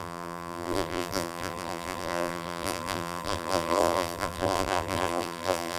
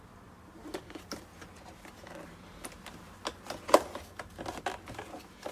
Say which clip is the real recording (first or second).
second